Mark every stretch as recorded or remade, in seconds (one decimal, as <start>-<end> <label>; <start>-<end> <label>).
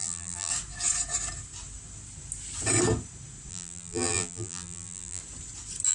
0.0-0.5 remade; 0.5-3.5 recorded; 3.5-5.2 remade; 5.2-5.9 recorded